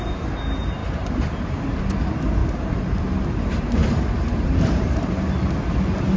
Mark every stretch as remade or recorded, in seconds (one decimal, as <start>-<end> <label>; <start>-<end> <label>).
0.0-0.8 recorded; 0.8-1.8 remade; 1.8-2.4 recorded; 2.4-3.0 remade; 3.0-3.8 recorded; 3.8-5.1 remade; 5.1-6.2 recorded